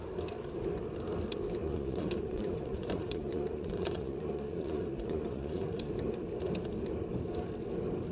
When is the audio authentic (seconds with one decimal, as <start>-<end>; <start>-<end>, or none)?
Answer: 0.0-1.6; 5.9-8.1